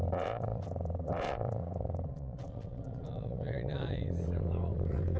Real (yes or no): no